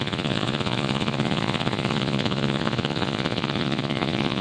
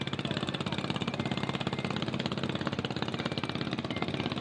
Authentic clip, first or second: second